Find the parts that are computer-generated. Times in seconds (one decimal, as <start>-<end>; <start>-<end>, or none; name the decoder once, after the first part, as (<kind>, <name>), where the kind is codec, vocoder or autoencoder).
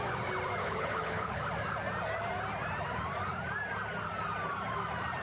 0.6-1.4 (codec, HILCodec)